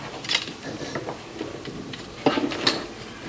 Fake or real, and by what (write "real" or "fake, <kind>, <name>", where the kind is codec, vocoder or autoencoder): fake, vocoder, BigVGAN v2